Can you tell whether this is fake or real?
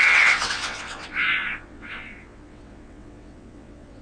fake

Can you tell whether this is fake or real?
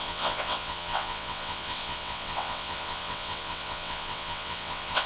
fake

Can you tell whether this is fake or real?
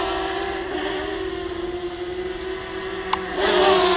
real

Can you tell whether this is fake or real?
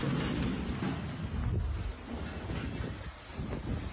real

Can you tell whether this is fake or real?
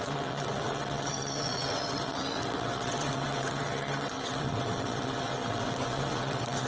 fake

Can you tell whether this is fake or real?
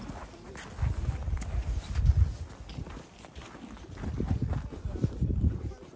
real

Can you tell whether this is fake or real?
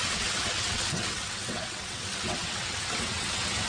fake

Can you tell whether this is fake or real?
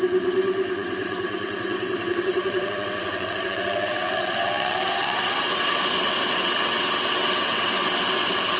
fake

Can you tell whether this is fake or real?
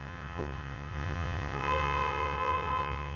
fake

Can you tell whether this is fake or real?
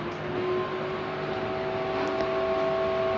real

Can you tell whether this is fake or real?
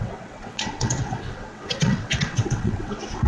fake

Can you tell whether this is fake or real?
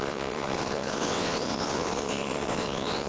fake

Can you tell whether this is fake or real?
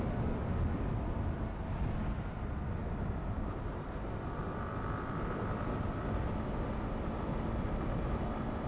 real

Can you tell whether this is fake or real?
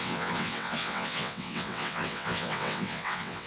fake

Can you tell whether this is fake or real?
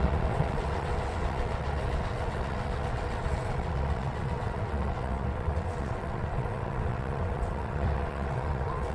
fake